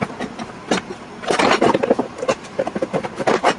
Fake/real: fake